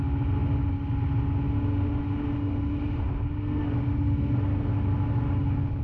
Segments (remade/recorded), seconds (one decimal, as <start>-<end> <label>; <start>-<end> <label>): 0.0-5.8 recorded